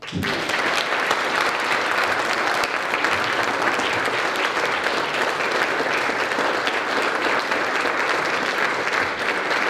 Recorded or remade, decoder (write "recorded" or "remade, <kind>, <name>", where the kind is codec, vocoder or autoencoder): recorded